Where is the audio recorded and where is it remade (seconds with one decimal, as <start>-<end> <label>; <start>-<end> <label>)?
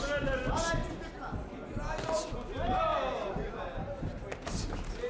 0.0-5.1 recorded